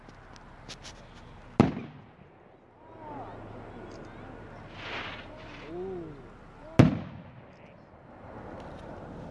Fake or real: real